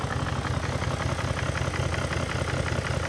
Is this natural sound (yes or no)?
yes